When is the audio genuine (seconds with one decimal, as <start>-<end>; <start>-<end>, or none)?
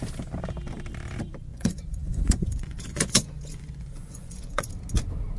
0.0-1.5; 4.7-5.4